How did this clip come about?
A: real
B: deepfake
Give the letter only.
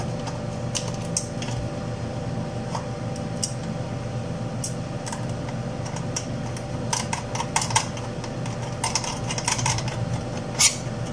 A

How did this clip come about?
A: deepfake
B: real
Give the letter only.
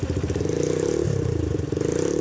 B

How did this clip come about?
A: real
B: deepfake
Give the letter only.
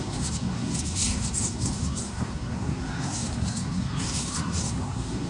B